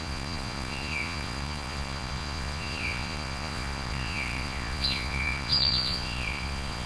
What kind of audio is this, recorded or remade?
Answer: remade